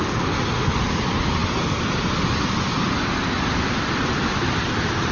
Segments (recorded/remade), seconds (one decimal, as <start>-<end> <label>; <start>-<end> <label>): 0.0-5.1 recorded